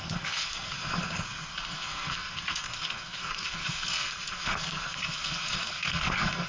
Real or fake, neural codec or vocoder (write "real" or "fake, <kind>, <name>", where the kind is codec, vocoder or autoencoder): fake, codec, SNAC